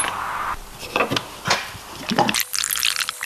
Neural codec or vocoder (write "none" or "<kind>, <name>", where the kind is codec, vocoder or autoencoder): none